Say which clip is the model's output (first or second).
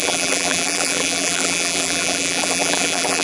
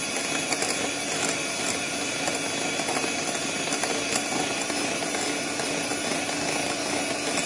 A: first